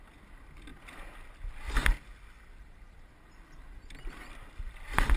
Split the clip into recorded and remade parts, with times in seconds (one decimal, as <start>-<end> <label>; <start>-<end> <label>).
0.0-5.2 recorded